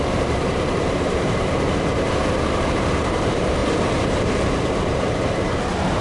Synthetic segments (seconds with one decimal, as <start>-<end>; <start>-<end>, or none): 0.0-6.0